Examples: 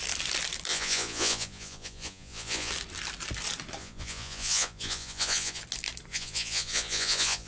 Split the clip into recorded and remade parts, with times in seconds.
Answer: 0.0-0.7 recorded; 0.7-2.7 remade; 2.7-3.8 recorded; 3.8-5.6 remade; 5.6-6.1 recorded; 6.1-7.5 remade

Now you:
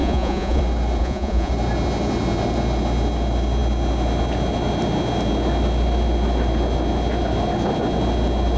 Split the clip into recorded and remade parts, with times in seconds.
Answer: 0.0-0.6 remade; 0.6-1.0 recorded; 1.0-1.5 remade; 1.5-8.6 recorded

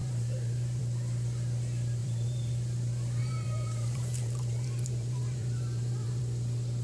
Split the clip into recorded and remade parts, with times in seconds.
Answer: 0.0-0.8 remade; 0.8-2.0 recorded; 2.0-2.5 remade; 2.5-3.2 recorded; 3.2-6.2 remade; 6.2-6.8 recorded

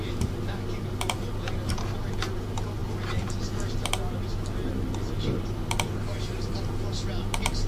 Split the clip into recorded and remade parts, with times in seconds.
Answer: 0.0-7.7 recorded

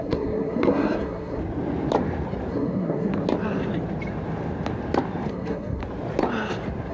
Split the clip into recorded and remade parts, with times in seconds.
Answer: 0.0-1.4 remade; 1.4-2.5 recorded; 2.5-3.1 remade; 3.1-5.3 recorded; 5.3-5.8 remade; 5.8-6.9 recorded

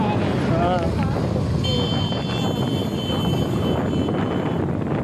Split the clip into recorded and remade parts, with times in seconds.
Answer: 0.0-5.0 recorded